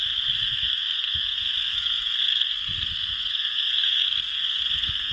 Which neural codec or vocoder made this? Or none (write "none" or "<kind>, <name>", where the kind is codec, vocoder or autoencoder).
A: codec, SNAC